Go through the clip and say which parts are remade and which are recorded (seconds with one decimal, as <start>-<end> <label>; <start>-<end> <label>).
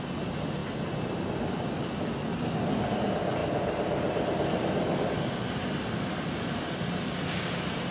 0.0-7.9 recorded